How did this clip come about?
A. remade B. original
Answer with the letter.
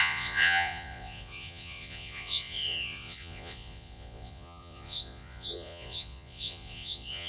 A